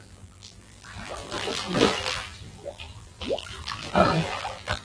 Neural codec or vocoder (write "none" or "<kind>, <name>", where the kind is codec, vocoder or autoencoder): vocoder, BigVGAN v2